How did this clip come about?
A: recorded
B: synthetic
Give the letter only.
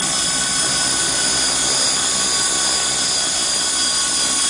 A